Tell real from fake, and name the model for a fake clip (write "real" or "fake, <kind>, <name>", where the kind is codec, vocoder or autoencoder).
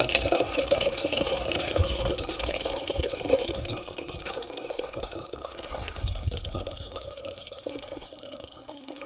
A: fake, codec, SNAC